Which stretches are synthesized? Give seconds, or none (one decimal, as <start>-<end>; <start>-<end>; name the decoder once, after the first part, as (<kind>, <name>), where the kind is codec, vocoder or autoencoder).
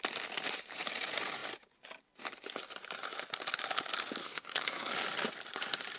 4.2-4.9 (codec, SNAC)